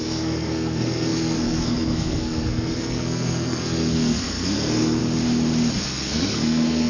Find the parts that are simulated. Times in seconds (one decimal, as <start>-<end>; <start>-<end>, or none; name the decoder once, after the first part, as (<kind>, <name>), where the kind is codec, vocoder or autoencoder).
0.0-5.0 (codec, SNAC); 5.8-6.9